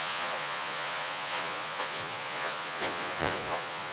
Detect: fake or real fake